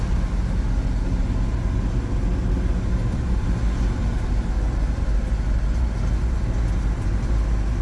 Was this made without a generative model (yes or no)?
yes